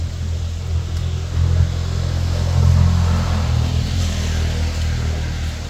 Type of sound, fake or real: real